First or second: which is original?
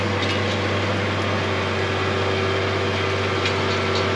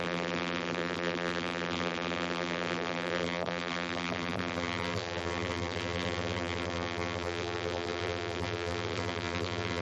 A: first